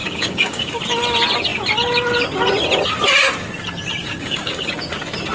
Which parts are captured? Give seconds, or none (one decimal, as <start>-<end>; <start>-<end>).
0.8-4.0; 4.7-5.3

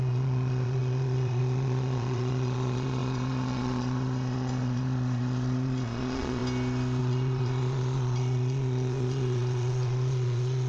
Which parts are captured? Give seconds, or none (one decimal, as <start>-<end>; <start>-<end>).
6.4-7.0

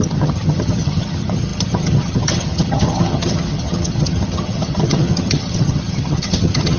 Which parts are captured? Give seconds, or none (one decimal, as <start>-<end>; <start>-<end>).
none

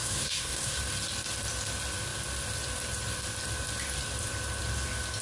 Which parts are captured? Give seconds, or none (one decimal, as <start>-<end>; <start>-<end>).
0.8-5.2